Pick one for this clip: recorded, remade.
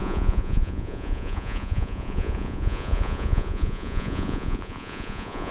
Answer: remade